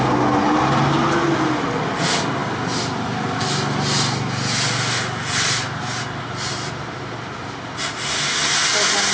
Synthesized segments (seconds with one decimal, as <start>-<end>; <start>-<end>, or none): none